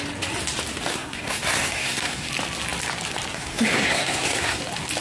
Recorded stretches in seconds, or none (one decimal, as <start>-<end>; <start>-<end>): 0.0-0.9; 2.3-3.3; 4.6-5.0